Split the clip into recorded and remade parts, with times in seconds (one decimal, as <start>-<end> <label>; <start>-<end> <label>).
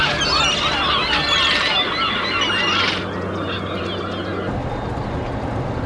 0.0-5.9 recorded